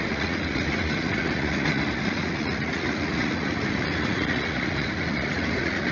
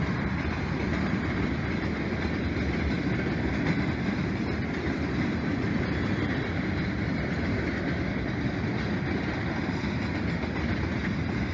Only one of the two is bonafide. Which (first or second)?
second